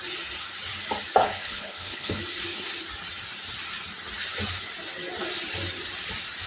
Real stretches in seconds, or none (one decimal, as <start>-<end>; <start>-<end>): 0.0-1.2; 2.2-6.5